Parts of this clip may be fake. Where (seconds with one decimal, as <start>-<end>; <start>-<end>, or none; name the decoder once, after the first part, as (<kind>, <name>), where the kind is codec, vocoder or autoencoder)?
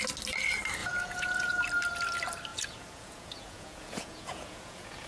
0.8-1.5 (vocoder, Vocos); 2.5-5.1